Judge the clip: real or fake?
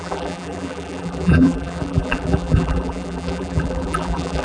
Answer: fake